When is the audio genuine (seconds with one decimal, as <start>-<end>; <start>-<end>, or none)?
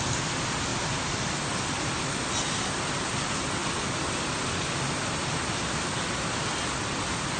0.0-7.4